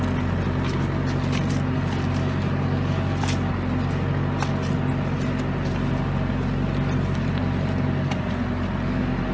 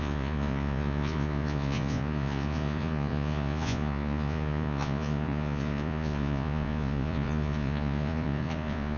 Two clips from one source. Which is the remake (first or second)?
second